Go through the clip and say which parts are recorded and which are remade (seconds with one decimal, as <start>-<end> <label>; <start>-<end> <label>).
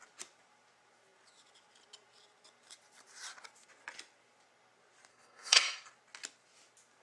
0.0-5.1 recorded; 5.1-5.9 remade; 5.9-7.0 recorded